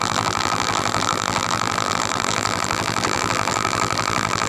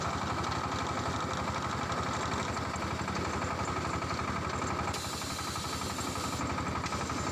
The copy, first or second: first